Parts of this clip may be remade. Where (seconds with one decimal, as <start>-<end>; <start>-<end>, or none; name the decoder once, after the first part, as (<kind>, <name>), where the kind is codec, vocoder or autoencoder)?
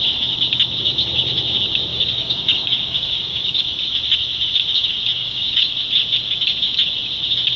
1.9-3.6 (codec, DAC); 5.2-5.7